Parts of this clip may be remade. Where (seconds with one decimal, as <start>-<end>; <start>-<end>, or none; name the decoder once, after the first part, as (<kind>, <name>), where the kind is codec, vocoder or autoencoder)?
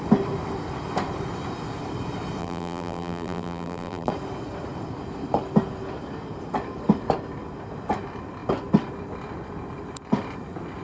2.4-4.1 (vocoder, BigVGAN v2)